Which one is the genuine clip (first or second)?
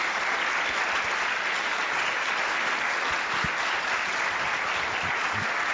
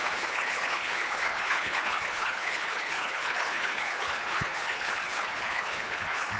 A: first